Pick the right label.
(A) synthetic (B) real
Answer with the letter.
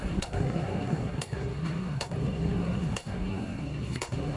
A